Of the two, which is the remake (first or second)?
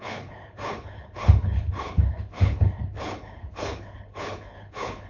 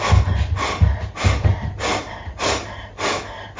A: first